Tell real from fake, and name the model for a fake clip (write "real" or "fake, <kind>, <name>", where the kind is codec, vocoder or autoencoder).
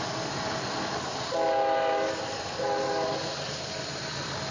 real